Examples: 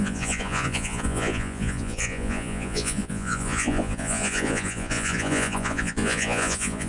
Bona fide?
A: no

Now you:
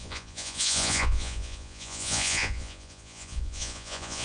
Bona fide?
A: no